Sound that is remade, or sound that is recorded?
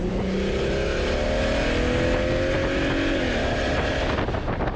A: recorded